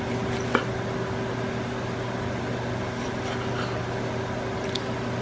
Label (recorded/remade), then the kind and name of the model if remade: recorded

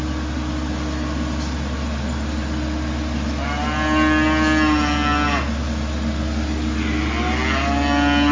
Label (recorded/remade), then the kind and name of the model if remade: recorded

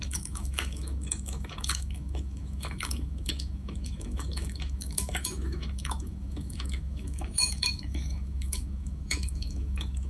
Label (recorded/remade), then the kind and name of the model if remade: remade, autoencoder, DAC-VAE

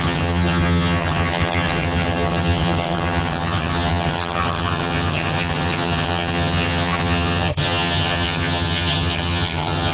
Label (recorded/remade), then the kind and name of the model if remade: remade, vocoder, HiFi-GAN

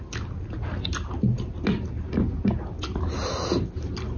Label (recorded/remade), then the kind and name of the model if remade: recorded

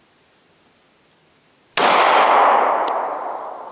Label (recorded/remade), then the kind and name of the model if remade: recorded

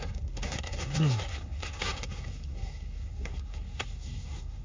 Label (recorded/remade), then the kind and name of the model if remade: remade, codec, SNAC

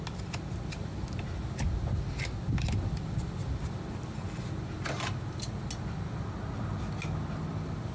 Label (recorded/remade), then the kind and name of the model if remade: recorded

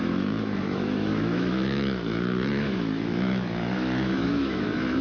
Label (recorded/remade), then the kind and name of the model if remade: remade, autoencoder, DAC-VAE